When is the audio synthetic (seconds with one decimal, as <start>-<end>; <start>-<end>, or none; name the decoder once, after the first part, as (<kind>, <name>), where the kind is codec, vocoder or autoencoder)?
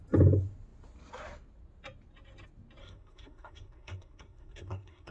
2.8-5.1 (codec, SNAC)